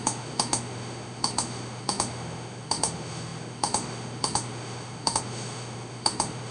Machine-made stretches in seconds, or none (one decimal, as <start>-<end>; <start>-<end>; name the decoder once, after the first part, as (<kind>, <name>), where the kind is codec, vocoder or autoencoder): 0.0-6.5 (autoencoder, DAC-VAE)